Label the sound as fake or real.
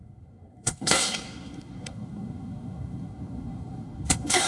fake